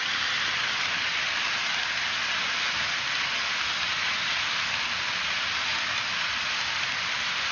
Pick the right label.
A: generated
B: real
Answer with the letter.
B